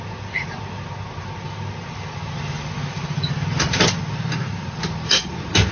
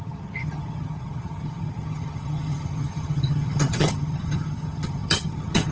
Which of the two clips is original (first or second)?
first